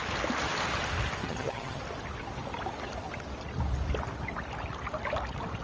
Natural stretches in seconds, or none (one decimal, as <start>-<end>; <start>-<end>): 0.0-1.2; 1.8-5.6

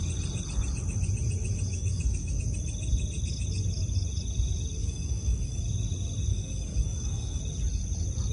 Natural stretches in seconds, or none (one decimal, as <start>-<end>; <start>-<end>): 0.0-1.7; 2.4-4.8; 5.6-6.3; 7.4-8.3

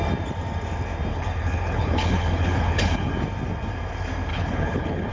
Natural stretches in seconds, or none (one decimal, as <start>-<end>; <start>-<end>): 0.0-1.1; 3.1-4.3

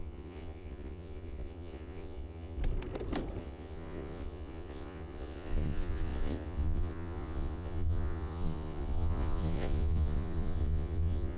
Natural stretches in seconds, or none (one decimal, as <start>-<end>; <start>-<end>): 2.6-3.4

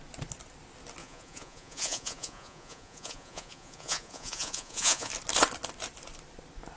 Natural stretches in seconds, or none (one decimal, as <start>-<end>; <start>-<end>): 0.0-1.0; 5.1-6.8

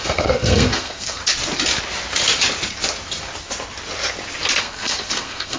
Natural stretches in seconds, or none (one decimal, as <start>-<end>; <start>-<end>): 1.2-4.6

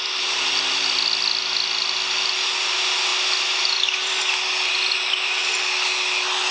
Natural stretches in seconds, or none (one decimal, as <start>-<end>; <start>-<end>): 0.0-6.5